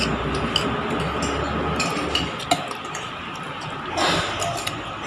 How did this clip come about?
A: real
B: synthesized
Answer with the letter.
A